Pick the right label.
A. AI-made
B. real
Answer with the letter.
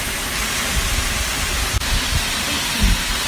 B